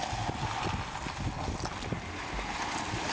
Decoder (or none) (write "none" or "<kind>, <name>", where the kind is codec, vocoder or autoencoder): none